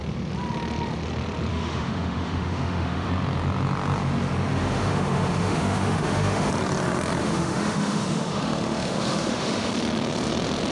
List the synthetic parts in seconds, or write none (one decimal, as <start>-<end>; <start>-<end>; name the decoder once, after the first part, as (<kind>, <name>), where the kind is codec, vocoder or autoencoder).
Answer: 1.5-3.1 (autoencoder, DAC-VAE); 4.5-6.5; 7.2-9.7